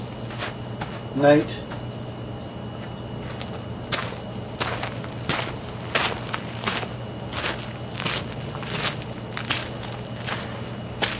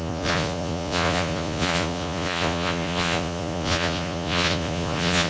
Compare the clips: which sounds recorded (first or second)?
first